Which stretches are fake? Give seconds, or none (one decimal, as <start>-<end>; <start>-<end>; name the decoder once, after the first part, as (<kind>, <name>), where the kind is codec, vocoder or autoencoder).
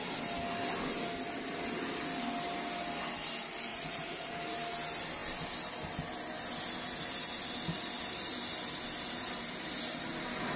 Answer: 3.7-4.3 (vocoder, Vocos)